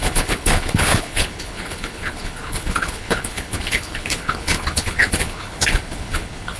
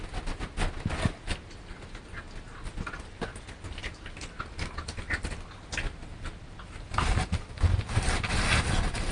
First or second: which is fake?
first